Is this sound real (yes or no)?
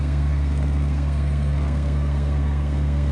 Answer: no